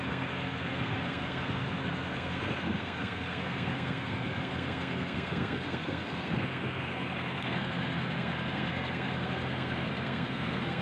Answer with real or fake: fake